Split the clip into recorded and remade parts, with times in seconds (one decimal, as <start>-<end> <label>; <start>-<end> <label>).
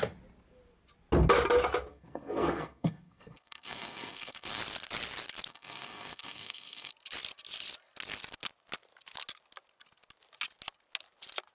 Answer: 0.0-1.9 recorded; 1.9-4.6 remade; 4.6-5.5 recorded; 5.5-6.9 remade; 6.9-11.5 recorded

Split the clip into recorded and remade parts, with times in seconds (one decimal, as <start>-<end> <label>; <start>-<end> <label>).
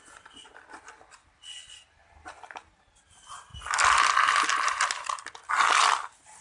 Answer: 0.0-6.4 recorded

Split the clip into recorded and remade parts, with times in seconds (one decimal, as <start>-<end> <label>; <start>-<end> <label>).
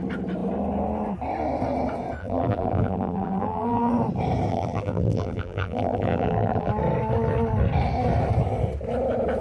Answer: 0.0-2.2 recorded; 2.2-3.9 remade; 3.9-4.5 recorded; 4.5-6.7 remade; 6.7-9.4 recorded